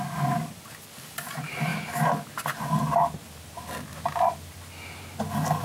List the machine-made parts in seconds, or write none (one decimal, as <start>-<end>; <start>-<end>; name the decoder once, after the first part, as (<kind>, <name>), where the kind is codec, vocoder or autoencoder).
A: none

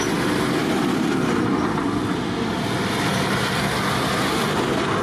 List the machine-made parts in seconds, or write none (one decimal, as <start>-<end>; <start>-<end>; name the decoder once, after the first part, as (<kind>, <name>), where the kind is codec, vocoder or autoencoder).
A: none